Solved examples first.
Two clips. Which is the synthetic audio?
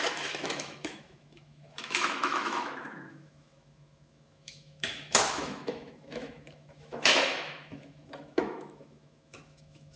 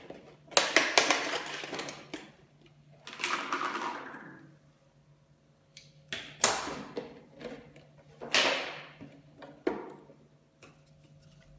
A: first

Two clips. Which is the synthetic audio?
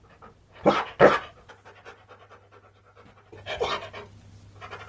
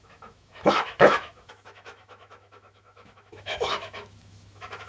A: second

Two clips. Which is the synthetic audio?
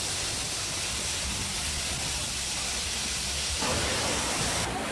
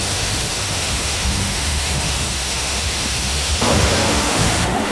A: second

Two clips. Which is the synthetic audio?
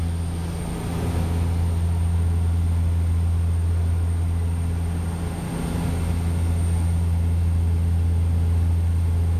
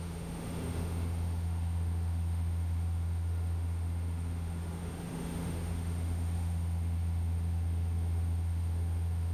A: second